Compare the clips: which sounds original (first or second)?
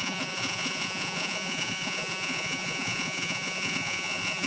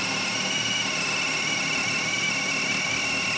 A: second